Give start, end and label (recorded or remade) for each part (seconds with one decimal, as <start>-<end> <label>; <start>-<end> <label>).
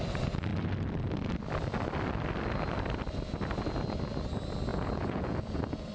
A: 0.0-4.7 recorded; 4.7-5.9 remade